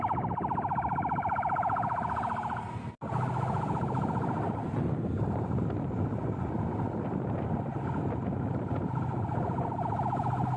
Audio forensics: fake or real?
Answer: real